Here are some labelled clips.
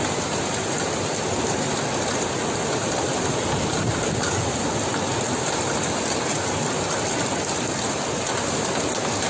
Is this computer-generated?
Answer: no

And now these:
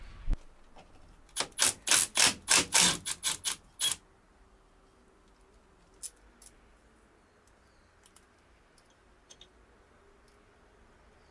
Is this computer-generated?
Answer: no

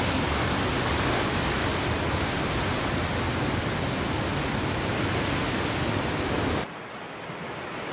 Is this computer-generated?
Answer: no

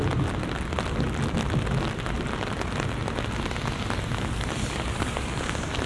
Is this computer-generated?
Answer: no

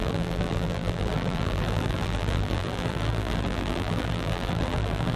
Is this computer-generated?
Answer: yes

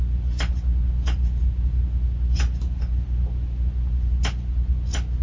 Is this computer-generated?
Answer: no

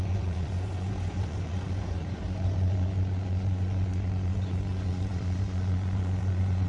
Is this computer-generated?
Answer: yes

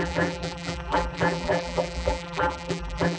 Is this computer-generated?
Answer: yes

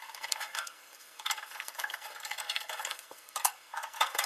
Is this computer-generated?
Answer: yes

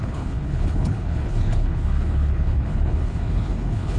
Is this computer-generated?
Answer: yes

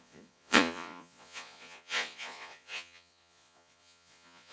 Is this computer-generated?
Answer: yes